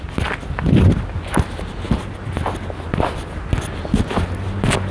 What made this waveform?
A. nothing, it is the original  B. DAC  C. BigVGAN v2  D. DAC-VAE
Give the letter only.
A